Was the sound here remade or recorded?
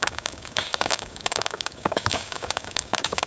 remade